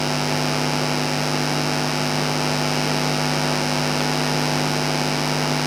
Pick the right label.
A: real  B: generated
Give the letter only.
A